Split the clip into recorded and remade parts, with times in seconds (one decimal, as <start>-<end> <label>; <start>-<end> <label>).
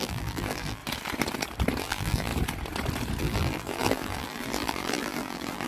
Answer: 0.0-0.8 remade; 0.8-1.8 recorded; 1.8-2.3 remade; 2.3-3.2 recorded; 3.2-5.7 remade